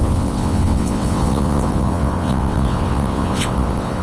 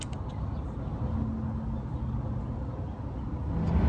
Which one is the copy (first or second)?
first